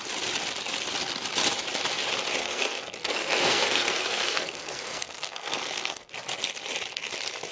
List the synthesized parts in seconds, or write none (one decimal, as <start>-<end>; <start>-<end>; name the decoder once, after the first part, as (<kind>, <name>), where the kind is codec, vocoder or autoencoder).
2.4-6.1 (codec, SNAC)